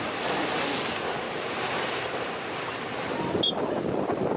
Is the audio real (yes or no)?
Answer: yes